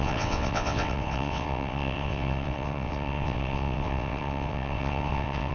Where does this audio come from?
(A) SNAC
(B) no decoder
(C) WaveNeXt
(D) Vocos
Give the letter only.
C